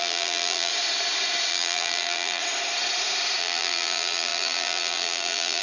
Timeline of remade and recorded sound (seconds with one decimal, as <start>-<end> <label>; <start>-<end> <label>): 0.0-0.7 remade; 0.7-1.5 recorded; 1.5-2.4 remade; 2.4-3.4 recorded; 3.4-5.6 remade